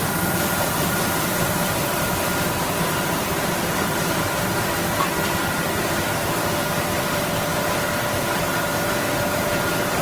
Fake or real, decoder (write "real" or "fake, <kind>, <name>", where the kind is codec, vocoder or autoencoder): fake, vocoder, BigVGAN v2